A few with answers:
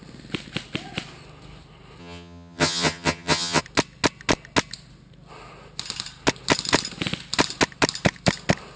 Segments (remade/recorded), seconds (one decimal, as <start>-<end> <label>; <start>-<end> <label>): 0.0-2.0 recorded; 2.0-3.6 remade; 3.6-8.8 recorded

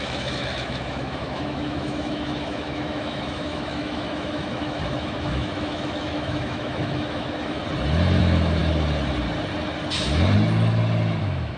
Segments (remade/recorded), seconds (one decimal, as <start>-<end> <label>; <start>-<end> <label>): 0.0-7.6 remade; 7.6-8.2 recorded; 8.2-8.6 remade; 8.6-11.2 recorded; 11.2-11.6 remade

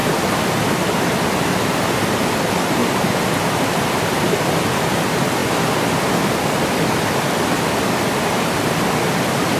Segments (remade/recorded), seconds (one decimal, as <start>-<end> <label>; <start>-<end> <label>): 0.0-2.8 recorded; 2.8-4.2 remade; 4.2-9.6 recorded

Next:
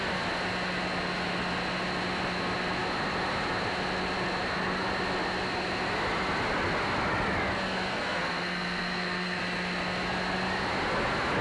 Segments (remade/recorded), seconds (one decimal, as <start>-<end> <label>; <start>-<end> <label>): 0.0-7.9 recorded; 7.9-9.4 remade; 9.4-11.4 recorded

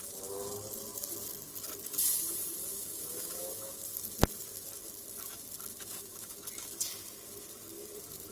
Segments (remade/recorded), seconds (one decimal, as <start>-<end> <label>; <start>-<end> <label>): 0.0-2.7 recorded; 2.7-3.8 remade; 3.8-5.7 recorded; 5.7-6.3 remade; 6.3-8.3 recorded

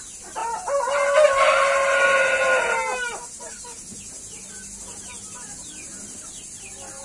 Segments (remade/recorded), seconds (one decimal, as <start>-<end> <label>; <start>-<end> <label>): 0.0-7.0 recorded

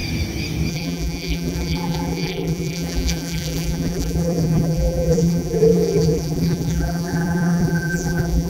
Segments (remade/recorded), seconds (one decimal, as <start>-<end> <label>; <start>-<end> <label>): 0.0-0.7 recorded; 0.7-8.5 remade